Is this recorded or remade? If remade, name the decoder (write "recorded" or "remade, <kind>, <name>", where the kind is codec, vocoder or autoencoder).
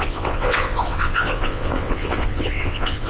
remade, vocoder, WaveNeXt